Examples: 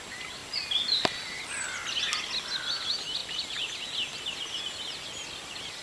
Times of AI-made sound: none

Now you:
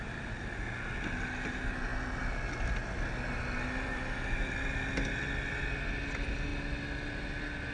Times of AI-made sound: none

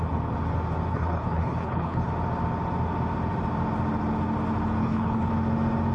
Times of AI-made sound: 0.9-2.1; 4.8-5.3

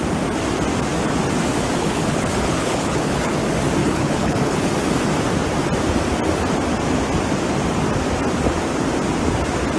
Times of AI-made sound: 1.8-3.3; 3.8-4.7

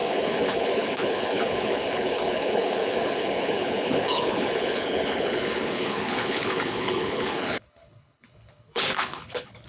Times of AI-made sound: 0.0-9.7

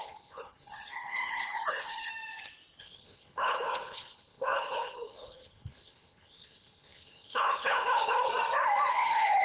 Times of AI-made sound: 0.0-2.1; 2.8-8.3; 8.9-9.4

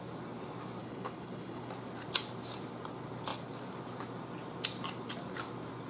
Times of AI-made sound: 0.8-1.7